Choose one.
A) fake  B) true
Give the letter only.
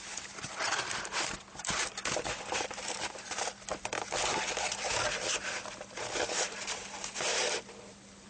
B